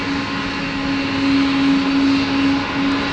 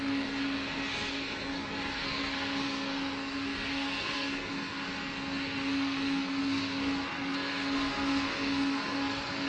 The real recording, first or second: first